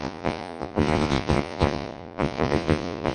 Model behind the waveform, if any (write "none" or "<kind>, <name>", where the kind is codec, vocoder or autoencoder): vocoder, Vocos